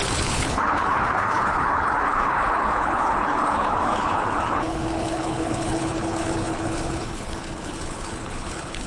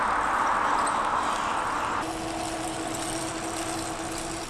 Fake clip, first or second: first